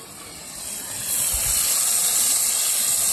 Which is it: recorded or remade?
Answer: recorded